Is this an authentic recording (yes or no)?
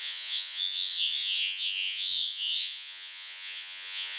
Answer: no